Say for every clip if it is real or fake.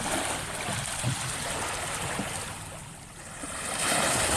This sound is real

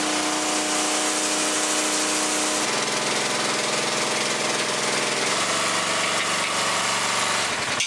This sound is real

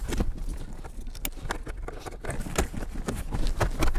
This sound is real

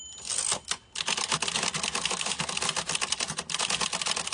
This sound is real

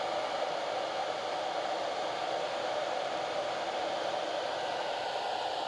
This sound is real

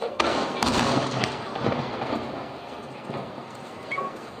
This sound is fake